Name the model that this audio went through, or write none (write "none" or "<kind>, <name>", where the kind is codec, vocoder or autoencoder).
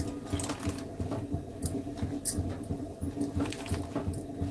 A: none